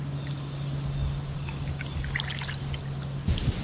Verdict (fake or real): real